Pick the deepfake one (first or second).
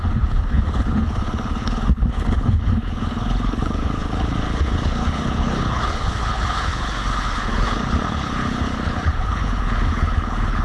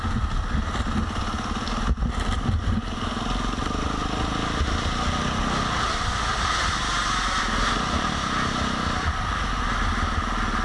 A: first